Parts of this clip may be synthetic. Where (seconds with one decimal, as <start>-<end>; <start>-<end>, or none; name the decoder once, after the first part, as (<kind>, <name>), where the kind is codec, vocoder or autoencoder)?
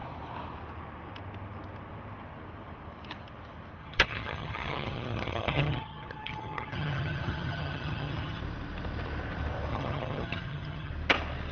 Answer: 3.8-8.4 (vocoder, HiFi-GAN); 9.7-10.9